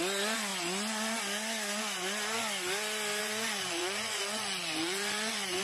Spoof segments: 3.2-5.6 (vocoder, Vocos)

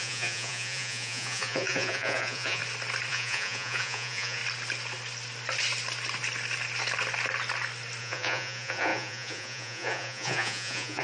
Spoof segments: 0.0-2.6 (vocoder, Vocos); 3.1-4.4; 8.0-11.0